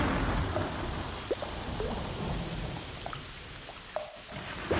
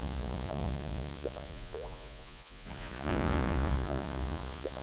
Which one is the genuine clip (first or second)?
first